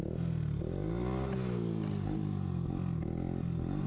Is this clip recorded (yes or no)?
yes